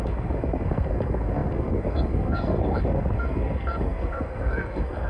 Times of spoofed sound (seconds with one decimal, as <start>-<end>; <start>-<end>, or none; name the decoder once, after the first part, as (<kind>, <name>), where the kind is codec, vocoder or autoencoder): 0.0-5.1 (codec, SNAC)